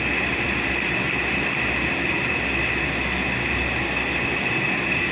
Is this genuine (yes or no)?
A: yes